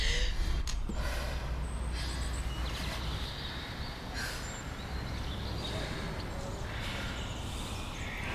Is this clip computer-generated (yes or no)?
no